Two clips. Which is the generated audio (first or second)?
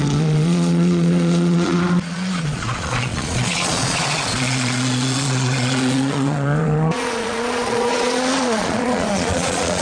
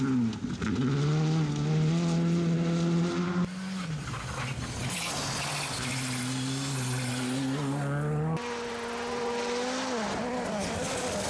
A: first